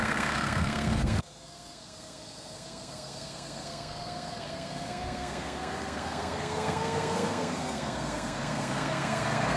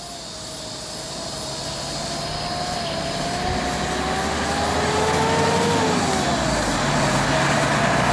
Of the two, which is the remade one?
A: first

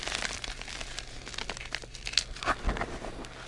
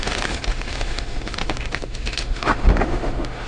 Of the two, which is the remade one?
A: second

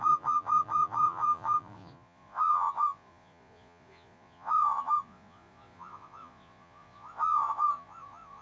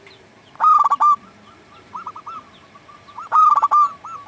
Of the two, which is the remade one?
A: first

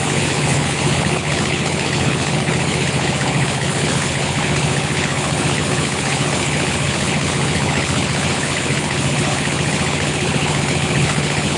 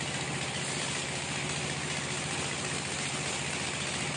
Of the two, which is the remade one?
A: first